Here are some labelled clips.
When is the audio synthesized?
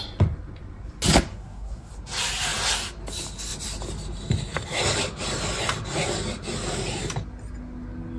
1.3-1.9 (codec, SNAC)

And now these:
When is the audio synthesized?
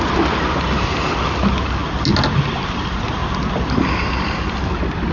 none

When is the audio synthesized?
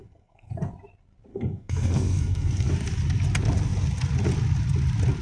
0.0-0.7 (codec, SNAC); 1.3-2.7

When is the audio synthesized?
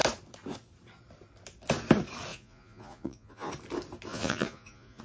2.3-3.5 (vocoder, Vocos); 4.1-5.0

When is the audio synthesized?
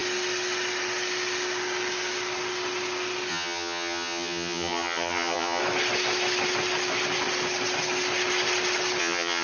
3.3-5.6 (vocoder, HiFi-GAN); 9.0-9.4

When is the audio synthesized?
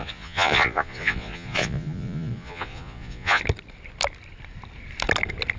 0.0-3.4 (vocoder, Vocos)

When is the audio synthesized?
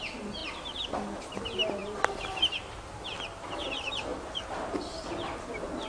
1.8-3.2 (vocoder, BigVGAN v2); 4.1-5.1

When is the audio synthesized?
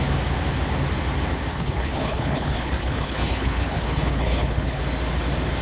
1.5-4.8 (codec, HILCodec)